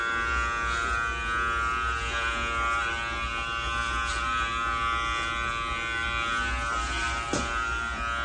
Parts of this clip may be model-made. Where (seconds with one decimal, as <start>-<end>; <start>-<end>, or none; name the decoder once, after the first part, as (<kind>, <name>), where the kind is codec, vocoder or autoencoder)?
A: none